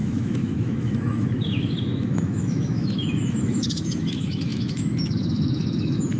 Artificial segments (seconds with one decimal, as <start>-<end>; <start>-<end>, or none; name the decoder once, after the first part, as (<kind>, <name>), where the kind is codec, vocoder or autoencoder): 0.0-6.2 (autoencoder, DAC-VAE)